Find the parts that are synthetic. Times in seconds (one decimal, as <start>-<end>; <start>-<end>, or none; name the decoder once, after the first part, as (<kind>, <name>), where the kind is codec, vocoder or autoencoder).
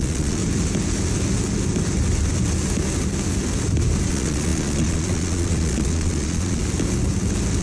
0.0-0.4 (vocoder, Vocos); 4.1-6.6